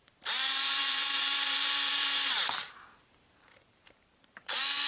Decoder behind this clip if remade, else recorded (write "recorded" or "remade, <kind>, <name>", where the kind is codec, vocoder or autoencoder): remade, vocoder, BigVGAN v2